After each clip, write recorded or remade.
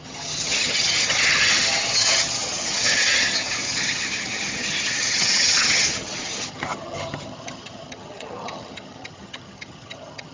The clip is remade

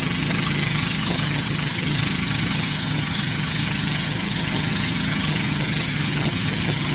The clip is remade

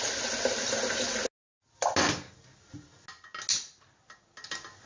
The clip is recorded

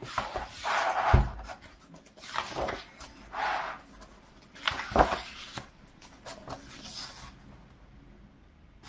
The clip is recorded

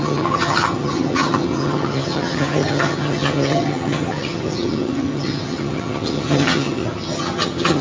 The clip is remade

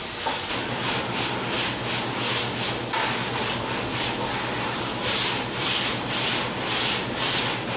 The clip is recorded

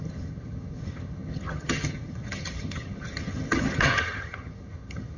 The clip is remade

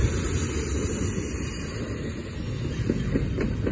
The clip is recorded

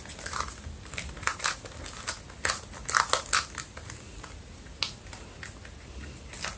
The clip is recorded